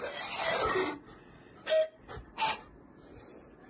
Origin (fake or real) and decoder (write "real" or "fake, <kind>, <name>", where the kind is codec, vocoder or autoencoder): real